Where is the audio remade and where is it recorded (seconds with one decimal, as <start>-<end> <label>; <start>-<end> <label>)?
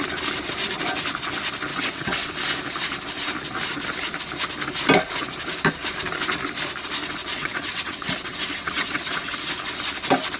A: 0.0-1.7 recorded; 1.7-2.3 remade; 2.3-7.4 recorded; 7.4-9.4 remade; 9.4-10.4 recorded